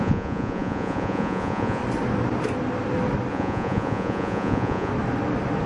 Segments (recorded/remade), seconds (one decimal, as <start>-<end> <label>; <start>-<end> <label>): 0.0-1.8 remade; 1.8-3.3 recorded; 3.3-4.9 remade; 4.9-5.7 recorded